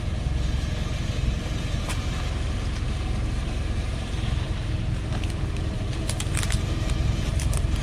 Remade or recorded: remade